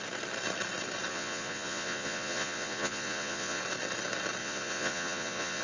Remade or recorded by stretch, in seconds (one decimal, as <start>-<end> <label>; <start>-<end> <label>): 0.0-1.1 recorded; 1.1-3.6 remade; 3.6-4.4 recorded; 4.4-5.6 remade